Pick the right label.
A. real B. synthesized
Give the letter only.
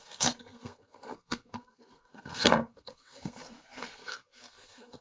B